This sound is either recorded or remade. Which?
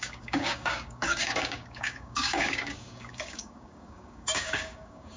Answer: remade